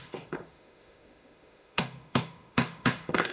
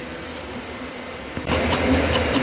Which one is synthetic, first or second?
first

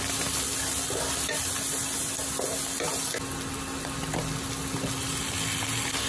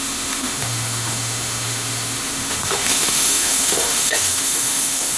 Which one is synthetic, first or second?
second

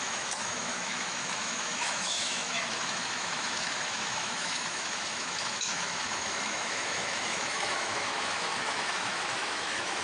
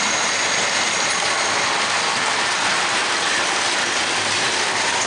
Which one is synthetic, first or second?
first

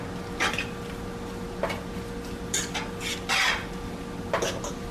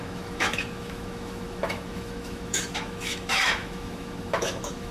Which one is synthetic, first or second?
second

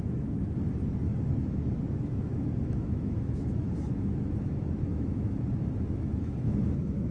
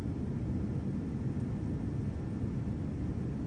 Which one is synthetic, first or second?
first